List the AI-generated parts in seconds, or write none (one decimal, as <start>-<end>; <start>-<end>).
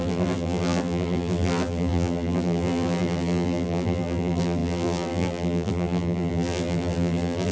0.0-7.5